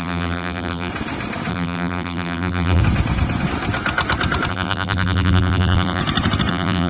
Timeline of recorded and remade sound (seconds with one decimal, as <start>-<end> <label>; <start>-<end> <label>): 0.0-0.9 remade; 0.9-1.5 recorded; 1.5-2.8 remade; 2.8-4.5 recorded; 4.5-6.0 remade; 6.0-6.5 recorded; 6.5-6.9 remade